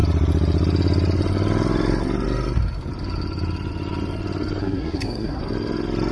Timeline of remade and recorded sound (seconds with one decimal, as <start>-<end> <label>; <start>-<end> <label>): 0.0-4.6 recorded; 4.6-5.4 remade; 5.4-6.1 recorded